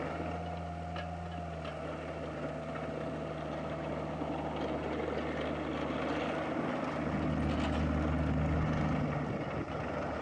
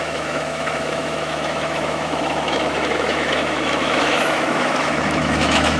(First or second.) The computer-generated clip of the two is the second